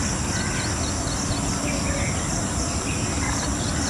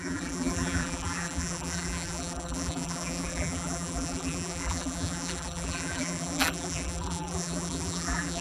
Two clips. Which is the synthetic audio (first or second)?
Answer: second